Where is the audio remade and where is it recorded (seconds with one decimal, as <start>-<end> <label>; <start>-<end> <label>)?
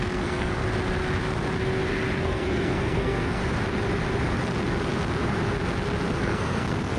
0.0-0.6 remade; 0.6-2.2 recorded; 2.2-3.4 remade; 3.4-6.2 recorded; 6.2-7.0 remade